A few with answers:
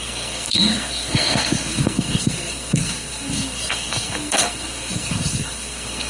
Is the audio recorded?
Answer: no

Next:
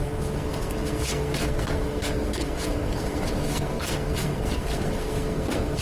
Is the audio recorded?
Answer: no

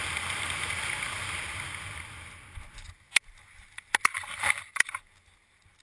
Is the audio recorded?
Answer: yes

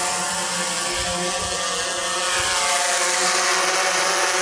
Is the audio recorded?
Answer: yes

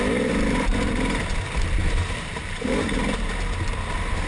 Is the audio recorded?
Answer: yes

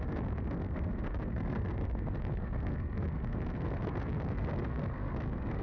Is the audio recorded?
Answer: no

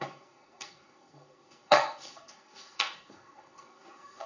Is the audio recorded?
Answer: no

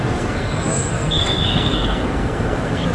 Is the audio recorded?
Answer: no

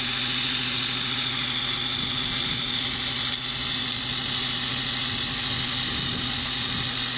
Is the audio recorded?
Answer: yes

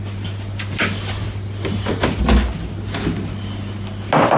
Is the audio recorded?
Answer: yes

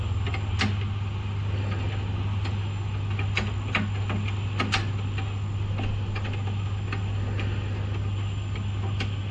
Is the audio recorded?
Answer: yes